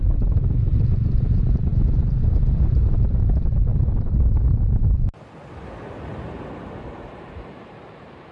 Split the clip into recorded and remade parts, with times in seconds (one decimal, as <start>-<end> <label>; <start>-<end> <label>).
0.0-1.7 remade; 1.7-2.9 recorded; 2.9-3.7 remade; 3.7-6.6 recorded; 6.6-8.3 remade

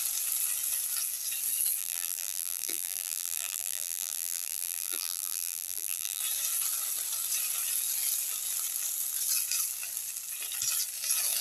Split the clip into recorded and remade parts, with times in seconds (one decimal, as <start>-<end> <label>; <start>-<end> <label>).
0.0-1.8 recorded; 1.8-6.2 remade; 6.2-11.4 recorded